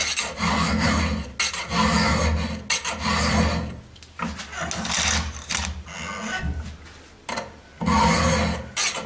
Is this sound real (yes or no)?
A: yes